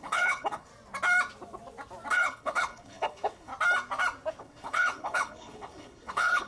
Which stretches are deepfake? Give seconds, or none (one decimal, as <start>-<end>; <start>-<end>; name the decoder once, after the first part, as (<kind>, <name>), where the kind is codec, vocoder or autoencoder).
0.0-0.7 (codec, HILCodec); 2.1-3.5; 4.4-6.5